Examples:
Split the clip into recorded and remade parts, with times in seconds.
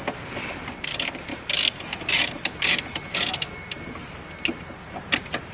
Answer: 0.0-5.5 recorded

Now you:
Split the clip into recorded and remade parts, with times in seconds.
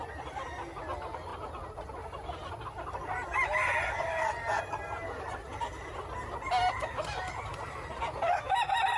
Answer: 0.0-9.0 recorded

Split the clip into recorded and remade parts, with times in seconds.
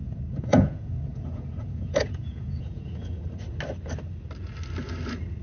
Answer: 0.0-3.2 remade; 3.2-5.4 recorded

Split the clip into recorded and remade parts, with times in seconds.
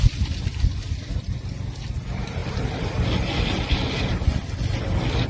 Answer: 0.0-5.3 recorded